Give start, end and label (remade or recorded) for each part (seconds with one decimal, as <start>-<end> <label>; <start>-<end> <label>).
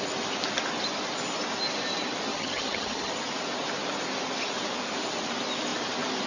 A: 0.0-2.3 recorded; 2.3-3.1 remade; 3.1-6.3 recorded